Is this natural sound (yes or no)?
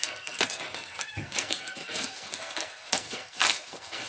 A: no